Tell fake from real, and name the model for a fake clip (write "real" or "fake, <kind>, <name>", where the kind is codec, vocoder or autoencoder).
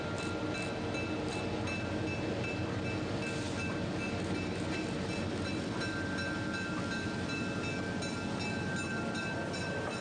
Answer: real